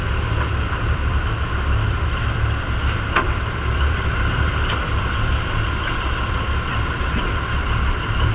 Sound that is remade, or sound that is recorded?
remade